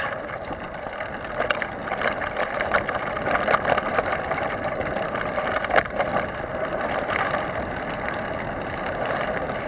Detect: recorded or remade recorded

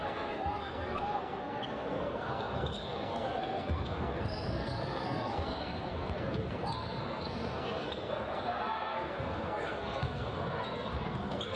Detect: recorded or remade remade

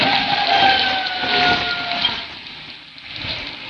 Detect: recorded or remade recorded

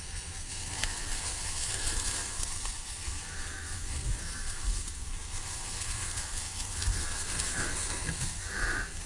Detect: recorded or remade remade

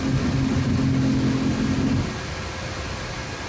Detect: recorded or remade recorded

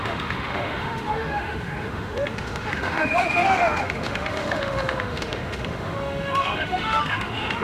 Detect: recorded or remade remade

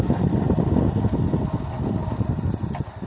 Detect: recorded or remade recorded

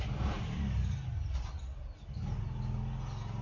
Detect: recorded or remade recorded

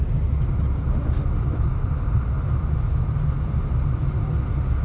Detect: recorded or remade recorded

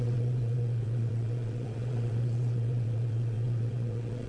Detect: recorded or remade remade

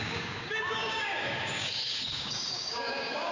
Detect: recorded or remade remade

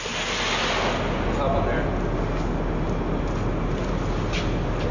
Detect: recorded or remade recorded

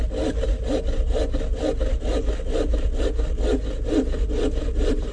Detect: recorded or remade recorded